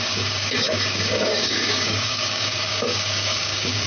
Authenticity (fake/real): fake